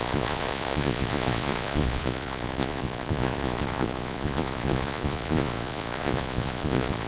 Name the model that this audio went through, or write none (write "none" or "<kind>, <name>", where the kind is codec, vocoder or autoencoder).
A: vocoder, Vocos